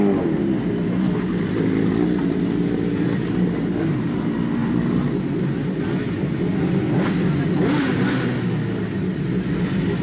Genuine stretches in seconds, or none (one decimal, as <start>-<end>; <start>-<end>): 0.0-10.0

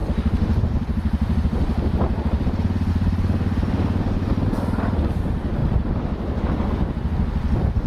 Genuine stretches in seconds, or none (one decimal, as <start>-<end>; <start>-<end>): 2.9-5.6; 6.7-7.9

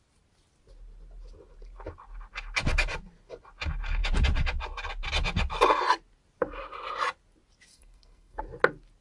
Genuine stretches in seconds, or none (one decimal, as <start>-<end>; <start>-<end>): 0.0-7.7; 8.4-9.0

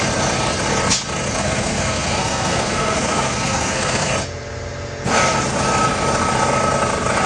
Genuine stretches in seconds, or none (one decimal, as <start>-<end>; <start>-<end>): 0.0-1.4; 4.1-7.3

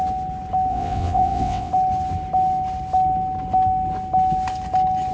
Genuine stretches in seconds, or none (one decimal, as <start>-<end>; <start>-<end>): 0.0-0.7; 1.7-5.1